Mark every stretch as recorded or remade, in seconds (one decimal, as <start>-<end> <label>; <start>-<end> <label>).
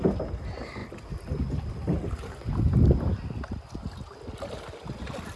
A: 0.0-5.4 recorded